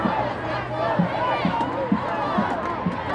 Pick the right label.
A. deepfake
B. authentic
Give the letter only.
B